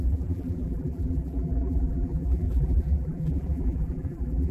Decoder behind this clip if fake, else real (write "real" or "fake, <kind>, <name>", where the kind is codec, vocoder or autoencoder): fake, vocoder, BigVGAN v2